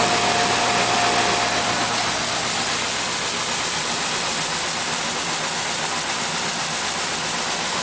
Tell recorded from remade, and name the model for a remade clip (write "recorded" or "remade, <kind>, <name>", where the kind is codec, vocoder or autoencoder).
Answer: recorded